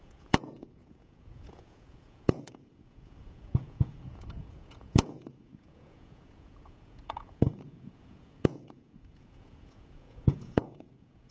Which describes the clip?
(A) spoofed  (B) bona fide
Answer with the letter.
A